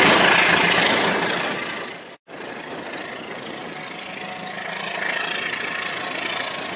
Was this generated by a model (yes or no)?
no